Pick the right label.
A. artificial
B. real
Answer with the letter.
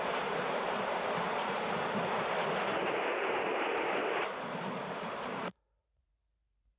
A